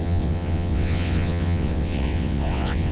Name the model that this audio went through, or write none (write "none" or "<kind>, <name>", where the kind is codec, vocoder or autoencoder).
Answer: vocoder, WaveNeXt